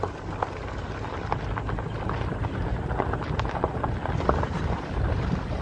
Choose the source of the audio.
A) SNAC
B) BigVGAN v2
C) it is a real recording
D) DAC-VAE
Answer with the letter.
C